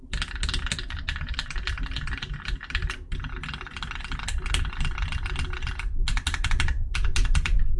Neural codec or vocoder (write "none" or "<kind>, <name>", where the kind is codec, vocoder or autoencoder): none